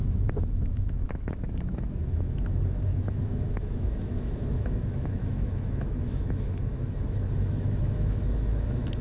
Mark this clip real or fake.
fake